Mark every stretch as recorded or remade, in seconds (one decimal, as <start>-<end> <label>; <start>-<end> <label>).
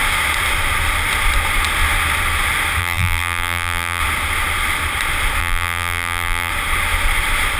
0.0-2.8 recorded; 2.8-4.0 remade; 4.0-5.4 recorded; 5.4-6.5 remade; 6.5-7.6 recorded